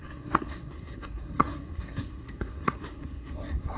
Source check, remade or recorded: remade